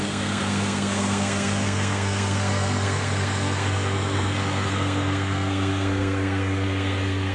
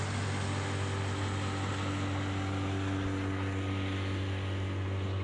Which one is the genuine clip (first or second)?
second